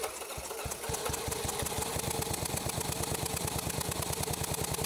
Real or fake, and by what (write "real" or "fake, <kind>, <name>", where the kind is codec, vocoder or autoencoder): real